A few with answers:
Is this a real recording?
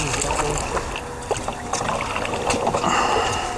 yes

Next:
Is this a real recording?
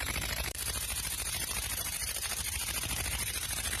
no